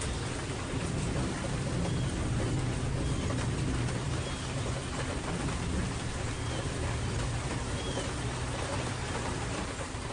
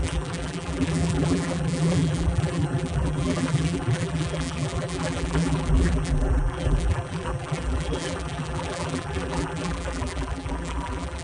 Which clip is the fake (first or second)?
second